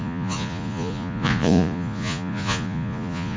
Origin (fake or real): fake